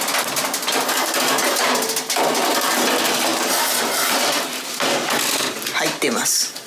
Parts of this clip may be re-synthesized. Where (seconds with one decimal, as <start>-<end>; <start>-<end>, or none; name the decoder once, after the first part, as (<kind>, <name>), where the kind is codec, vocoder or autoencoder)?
3.3-6.7 (vocoder, BigVGAN v2)